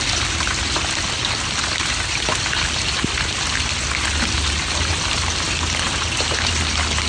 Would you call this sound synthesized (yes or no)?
no